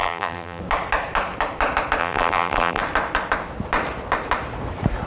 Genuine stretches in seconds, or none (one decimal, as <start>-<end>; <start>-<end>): 0.6-2.0; 2.8-5.1